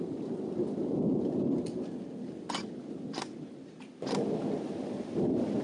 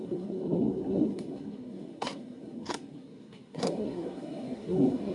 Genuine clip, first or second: first